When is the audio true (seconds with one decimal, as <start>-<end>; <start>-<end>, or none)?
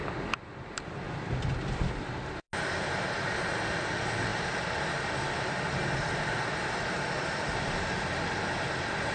2.2-9.1